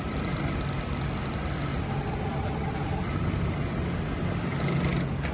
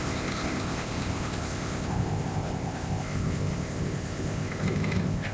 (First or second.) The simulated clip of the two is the second